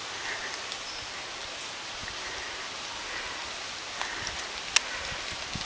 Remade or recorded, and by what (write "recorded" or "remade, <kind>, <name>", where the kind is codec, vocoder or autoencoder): recorded